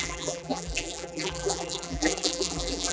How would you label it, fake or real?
fake